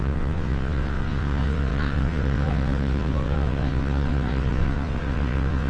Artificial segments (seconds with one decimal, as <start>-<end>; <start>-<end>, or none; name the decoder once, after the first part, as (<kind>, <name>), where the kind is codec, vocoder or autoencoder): 0.0-5.7 (vocoder, WaveNeXt)